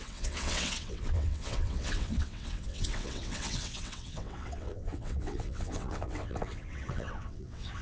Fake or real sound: fake